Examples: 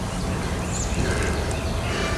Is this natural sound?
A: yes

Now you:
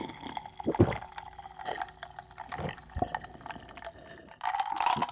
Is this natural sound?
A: yes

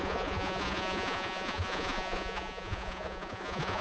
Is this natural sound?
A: no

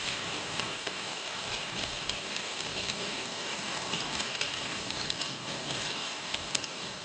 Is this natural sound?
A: no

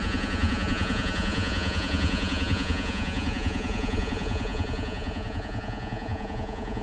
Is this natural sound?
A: no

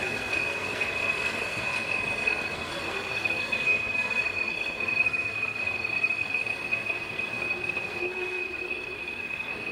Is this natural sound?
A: no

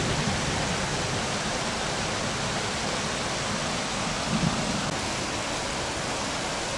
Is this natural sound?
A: yes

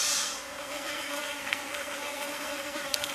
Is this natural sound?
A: no